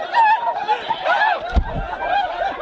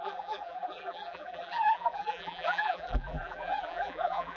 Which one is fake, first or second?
second